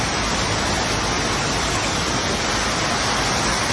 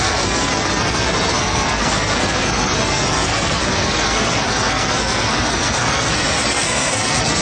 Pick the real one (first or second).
first